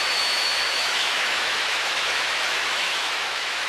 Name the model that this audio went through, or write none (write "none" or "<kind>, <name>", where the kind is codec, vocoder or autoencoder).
autoencoder, DAC-VAE